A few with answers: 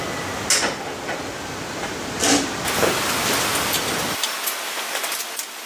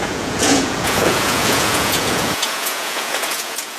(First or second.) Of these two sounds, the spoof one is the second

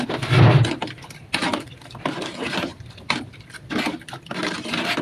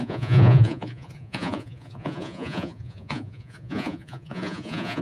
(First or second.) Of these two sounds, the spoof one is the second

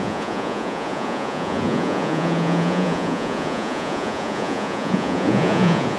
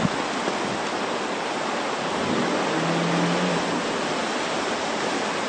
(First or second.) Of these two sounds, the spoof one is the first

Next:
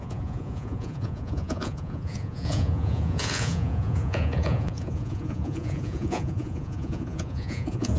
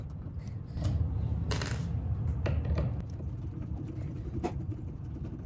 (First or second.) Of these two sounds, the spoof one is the first